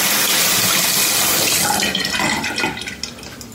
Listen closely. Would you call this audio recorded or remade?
recorded